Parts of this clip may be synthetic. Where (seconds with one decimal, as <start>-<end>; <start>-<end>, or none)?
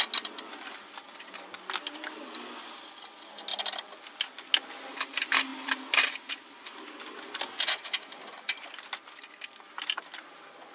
none